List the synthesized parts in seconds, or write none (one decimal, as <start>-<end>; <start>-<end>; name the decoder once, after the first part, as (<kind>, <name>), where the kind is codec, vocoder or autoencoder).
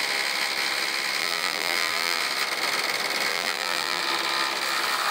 1.2-2.2 (vocoder, BigVGAN v2); 3.3-4.0